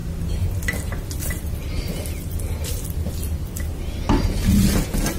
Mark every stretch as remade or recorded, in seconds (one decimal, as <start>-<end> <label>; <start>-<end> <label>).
0.0-5.2 recorded